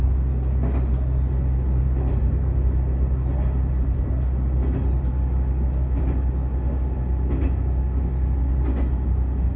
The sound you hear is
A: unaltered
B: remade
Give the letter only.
A